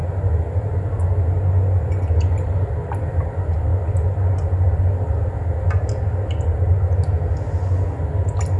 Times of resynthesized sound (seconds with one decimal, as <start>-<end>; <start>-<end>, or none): none

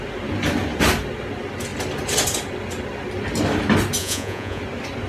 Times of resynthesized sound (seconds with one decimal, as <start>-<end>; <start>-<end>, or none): 4.0-4.6

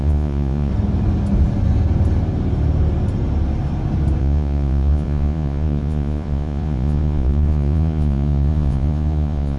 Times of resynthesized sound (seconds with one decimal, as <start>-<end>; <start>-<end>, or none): 0.0-0.7; 4.2-9.6

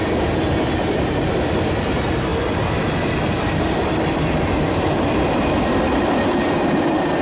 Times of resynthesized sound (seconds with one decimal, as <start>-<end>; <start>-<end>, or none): none

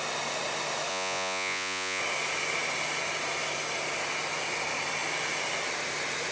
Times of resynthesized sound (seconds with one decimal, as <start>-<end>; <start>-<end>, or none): 0.9-2.0

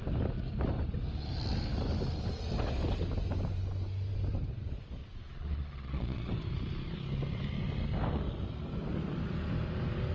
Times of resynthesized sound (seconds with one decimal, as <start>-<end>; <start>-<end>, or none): 5.0-6.3

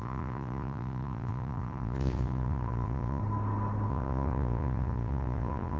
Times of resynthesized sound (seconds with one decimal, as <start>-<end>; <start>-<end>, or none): 0.0-3.2; 3.9-5.8